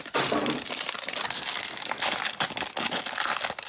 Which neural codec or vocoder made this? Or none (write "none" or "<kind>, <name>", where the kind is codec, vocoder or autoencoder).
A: none